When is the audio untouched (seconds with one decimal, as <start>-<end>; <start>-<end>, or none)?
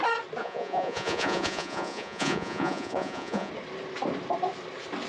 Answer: 0.0-0.4; 3.5-5.1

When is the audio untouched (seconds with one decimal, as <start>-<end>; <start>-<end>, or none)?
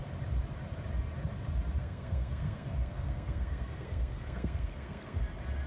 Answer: 0.0-1.8; 5.2-5.7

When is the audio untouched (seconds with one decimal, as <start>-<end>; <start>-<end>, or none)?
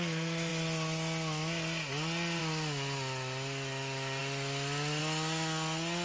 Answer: 0.0-6.0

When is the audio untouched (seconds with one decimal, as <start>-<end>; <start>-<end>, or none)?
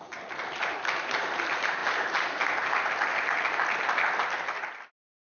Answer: 0.0-5.2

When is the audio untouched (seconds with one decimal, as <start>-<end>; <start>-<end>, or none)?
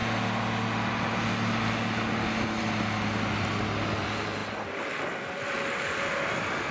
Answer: 0.0-6.7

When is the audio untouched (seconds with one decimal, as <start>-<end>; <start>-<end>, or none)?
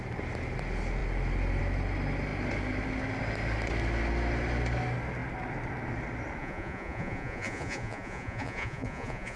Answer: 0.0-6.4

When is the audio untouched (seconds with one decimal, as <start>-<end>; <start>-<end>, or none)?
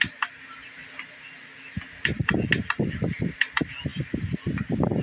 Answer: 0.0-5.0